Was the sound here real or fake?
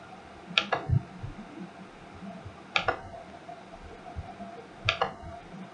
real